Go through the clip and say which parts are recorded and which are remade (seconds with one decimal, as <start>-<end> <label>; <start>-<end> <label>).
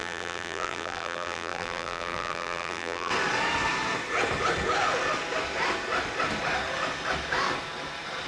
0.0-3.1 remade; 3.1-8.3 recorded